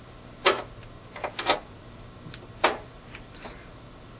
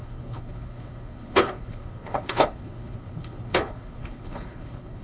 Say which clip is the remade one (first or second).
second